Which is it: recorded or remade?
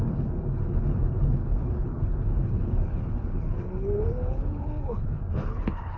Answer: remade